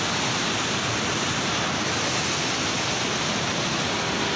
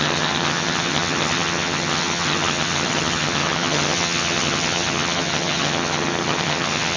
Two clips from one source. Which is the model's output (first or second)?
second